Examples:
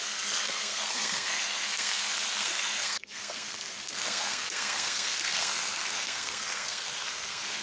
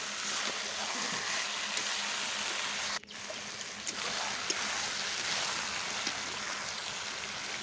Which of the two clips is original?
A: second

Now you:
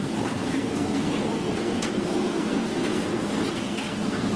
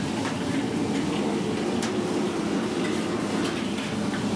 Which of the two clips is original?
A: second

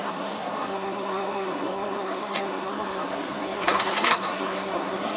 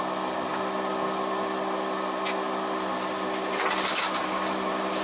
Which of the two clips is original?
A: second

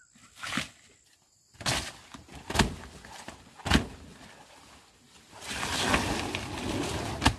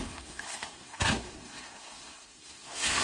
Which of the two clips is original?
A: first